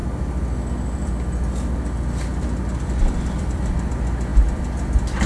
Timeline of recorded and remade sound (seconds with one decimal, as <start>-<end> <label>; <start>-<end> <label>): 0.0-2.7 recorded; 2.7-3.7 remade; 3.7-5.3 recorded